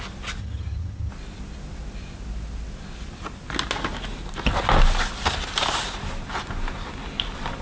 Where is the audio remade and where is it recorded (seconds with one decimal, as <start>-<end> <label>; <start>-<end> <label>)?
0.0-0.4 recorded; 0.4-1.1 remade; 1.1-7.6 recorded